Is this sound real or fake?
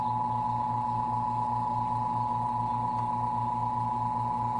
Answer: real